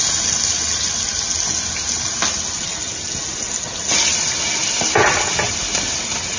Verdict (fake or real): real